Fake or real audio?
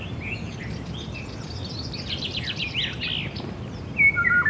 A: real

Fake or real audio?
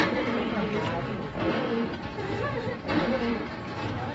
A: fake